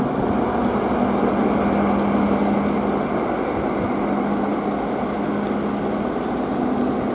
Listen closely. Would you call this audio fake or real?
real